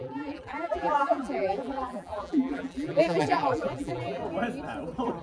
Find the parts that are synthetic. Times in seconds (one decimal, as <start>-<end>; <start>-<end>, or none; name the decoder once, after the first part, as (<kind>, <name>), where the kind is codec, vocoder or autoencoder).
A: 0.0-4.2 (vocoder, BigVGAN v2)